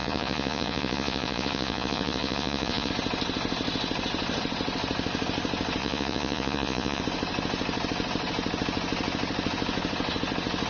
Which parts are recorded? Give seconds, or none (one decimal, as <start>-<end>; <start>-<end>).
2.9-5.8; 7.0-10.7